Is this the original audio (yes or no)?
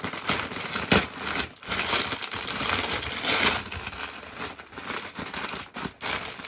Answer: yes